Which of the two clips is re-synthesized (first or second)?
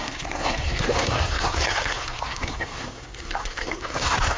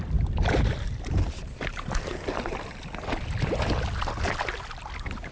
first